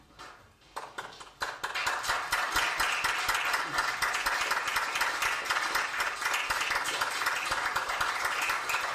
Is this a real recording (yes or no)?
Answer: yes